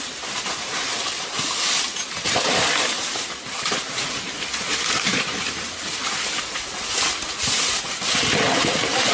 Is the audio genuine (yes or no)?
yes